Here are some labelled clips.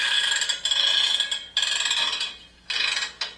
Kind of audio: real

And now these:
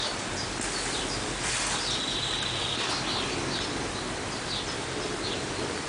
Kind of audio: real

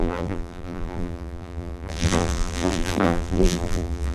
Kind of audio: fake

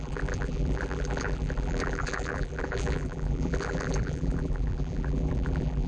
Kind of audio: fake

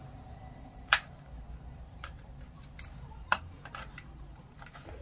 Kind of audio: fake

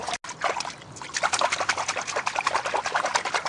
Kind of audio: real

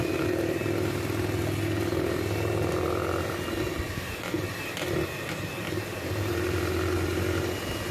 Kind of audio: real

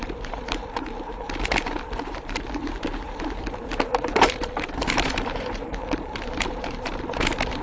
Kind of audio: fake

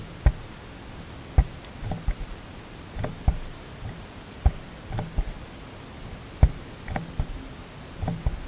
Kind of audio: real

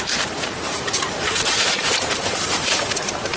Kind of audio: fake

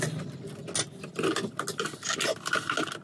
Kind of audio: real